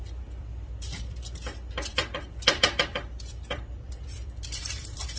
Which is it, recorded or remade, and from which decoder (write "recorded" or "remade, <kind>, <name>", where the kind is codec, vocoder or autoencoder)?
remade, vocoder, BigVGAN v2